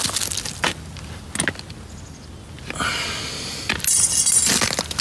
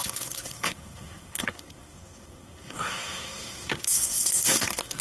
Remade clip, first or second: second